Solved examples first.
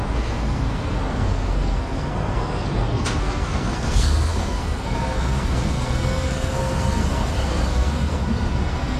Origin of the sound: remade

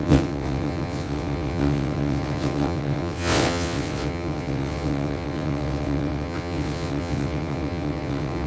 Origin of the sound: remade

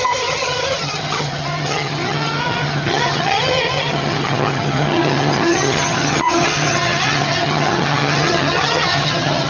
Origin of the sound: remade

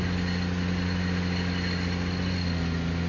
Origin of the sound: recorded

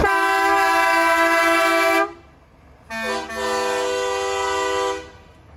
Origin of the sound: recorded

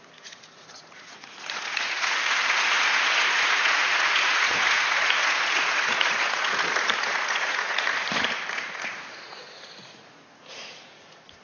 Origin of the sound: remade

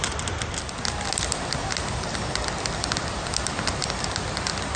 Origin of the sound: recorded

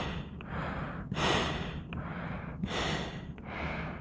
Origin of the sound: recorded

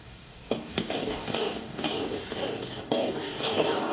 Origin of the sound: remade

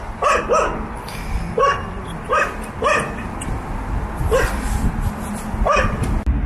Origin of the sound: recorded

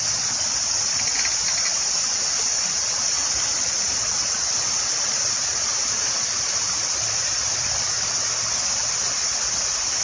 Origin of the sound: recorded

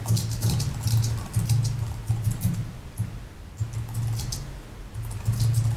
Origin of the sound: recorded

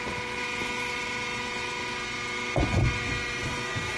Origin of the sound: recorded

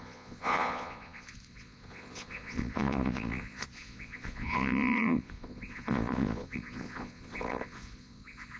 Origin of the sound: remade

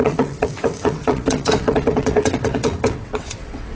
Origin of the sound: remade